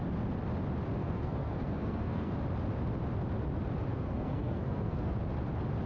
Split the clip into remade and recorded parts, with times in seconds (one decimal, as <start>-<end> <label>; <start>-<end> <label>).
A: 0.0-1.0 recorded; 1.0-2.3 remade; 2.3-3.9 recorded; 3.9-5.1 remade; 5.1-5.9 recorded